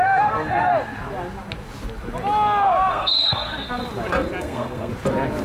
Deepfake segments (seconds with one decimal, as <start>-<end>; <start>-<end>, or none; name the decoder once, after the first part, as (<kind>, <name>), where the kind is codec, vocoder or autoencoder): 0.0-0.7 (codec, SNAC); 2.9-3.8; 4.4-4.9